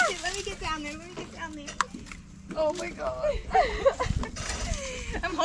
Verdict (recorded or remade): recorded